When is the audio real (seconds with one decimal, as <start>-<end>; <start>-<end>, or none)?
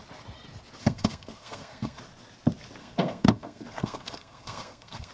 0.0-0.8; 2.0-2.8